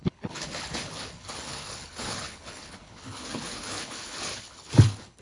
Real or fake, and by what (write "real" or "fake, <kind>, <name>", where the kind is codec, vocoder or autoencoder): fake, codec, HILCodec